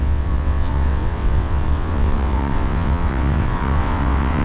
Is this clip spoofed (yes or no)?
yes